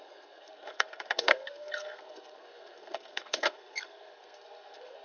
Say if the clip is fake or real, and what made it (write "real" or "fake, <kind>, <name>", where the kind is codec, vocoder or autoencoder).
fake, codec, SNAC